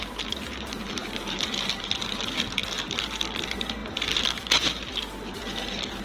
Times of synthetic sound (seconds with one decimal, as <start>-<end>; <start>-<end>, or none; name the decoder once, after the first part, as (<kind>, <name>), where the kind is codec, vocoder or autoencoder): none